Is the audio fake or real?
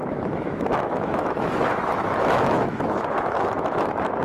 fake